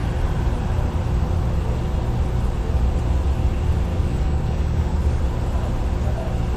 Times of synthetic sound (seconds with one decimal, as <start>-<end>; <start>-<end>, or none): 3.9-5.2